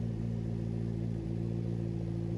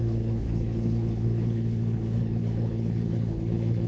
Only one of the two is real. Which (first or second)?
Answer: first